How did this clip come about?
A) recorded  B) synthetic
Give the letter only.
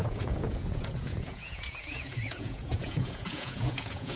B